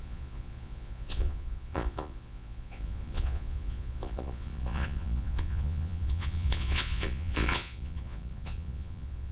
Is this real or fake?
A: fake